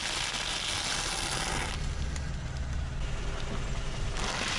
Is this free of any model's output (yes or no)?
yes